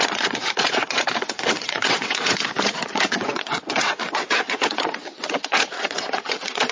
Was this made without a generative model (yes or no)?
no